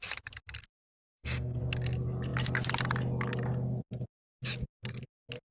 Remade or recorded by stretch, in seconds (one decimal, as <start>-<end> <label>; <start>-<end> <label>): 0.0-0.7 recorded; 0.7-1.6 remade; 1.6-5.5 recorded